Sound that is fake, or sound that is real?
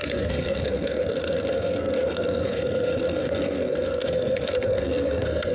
fake